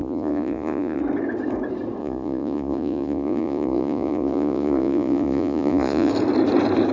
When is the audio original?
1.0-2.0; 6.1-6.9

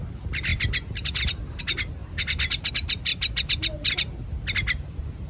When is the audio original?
0.0-5.3

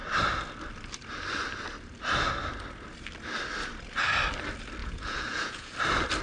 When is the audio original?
0.0-4.8; 5.7-6.2

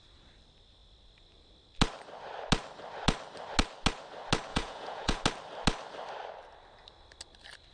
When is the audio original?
0.0-4.5; 5.2-7.7

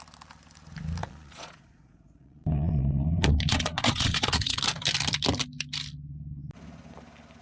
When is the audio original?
0.0-1.0; 4.6-7.4

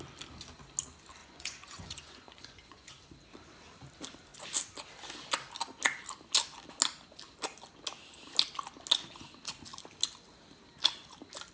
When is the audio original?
0.0-1.2; 2.9-11.5

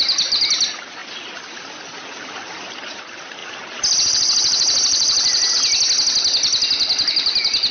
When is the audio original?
0.0-7.7